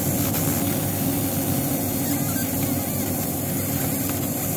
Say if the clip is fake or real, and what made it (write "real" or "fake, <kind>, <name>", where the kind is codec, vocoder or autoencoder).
real